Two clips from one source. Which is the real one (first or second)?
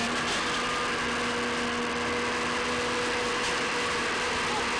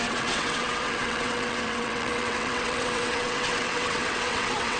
first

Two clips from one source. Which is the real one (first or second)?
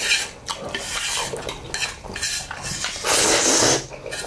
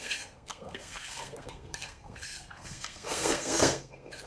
first